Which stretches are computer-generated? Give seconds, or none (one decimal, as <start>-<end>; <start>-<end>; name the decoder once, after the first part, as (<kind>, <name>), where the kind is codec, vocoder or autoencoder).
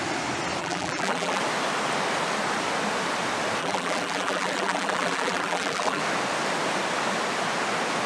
0.6-1.4 (vocoder, BigVGAN v2); 3.6-6.0